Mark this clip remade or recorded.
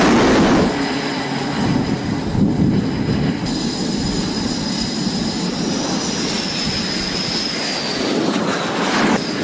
recorded